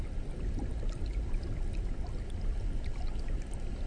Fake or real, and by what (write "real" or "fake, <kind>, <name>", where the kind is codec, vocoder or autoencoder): real